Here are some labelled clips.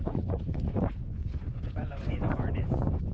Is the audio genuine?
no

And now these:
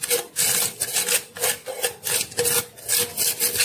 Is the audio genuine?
yes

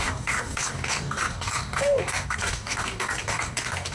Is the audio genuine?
no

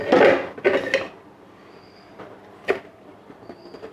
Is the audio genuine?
yes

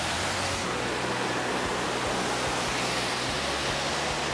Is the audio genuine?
yes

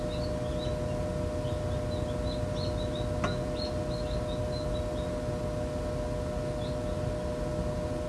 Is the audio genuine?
yes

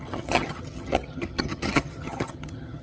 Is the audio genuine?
no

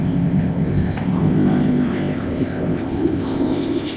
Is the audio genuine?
no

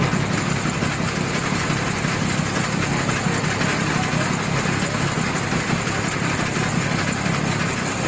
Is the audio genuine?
yes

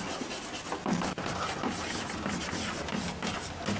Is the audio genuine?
yes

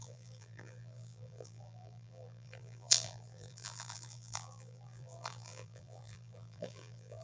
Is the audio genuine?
no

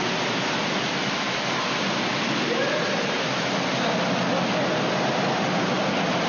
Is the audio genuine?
yes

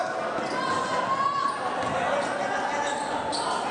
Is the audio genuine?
yes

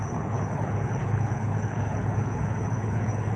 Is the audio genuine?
no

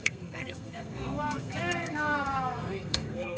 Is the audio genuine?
no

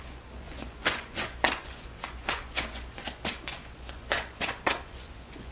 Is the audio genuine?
no